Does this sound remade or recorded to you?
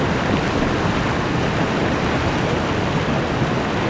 recorded